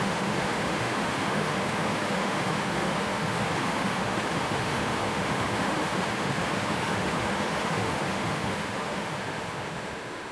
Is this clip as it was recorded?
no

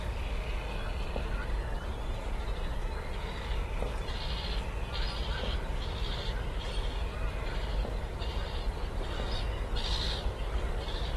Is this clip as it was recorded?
yes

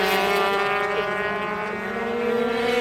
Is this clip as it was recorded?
yes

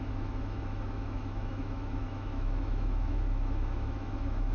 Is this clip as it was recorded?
no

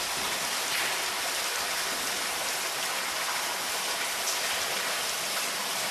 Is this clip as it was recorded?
yes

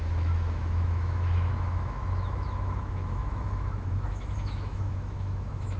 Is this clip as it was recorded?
no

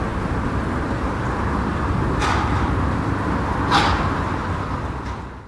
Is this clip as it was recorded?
yes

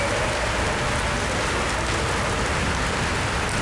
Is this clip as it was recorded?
yes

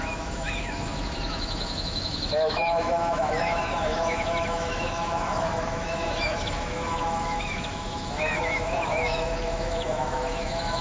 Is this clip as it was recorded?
no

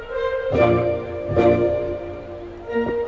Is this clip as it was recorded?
yes